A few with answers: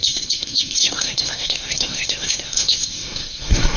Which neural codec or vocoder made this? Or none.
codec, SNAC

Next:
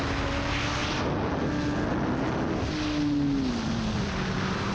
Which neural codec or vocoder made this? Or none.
none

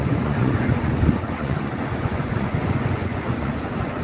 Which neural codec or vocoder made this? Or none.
vocoder, Vocos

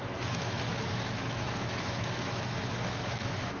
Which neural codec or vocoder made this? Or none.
autoencoder, DAC-VAE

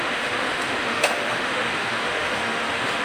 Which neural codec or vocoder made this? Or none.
autoencoder, DAC-VAE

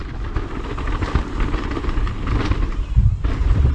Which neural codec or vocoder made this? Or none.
none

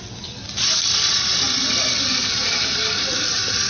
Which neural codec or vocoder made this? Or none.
none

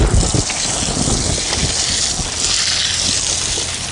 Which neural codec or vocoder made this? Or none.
none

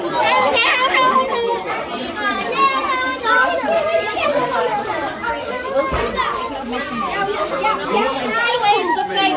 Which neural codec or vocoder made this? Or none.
vocoder, BigVGAN v2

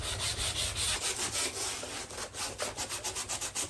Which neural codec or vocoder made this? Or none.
none